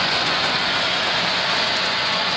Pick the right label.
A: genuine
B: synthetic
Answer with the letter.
B